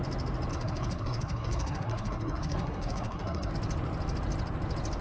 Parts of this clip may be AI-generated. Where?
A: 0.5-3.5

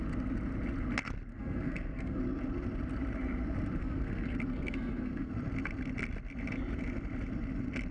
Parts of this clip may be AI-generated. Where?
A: 1.3-2.2; 3.8-5.3

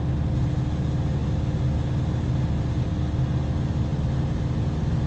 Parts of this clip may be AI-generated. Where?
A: none

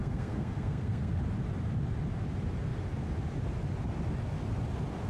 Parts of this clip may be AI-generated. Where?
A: 0.0-1.2